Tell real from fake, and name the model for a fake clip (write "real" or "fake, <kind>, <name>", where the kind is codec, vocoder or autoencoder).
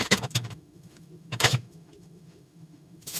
fake, autoencoder, DAC-VAE